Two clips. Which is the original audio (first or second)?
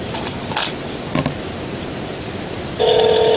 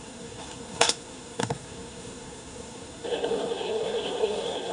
first